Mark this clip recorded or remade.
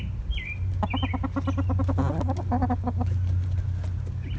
recorded